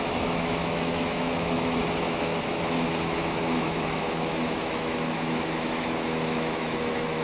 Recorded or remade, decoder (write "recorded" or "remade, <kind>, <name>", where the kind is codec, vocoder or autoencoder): remade, autoencoder, DAC-VAE